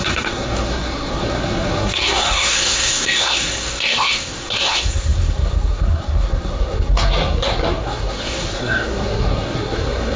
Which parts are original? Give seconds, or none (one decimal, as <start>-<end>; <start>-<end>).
none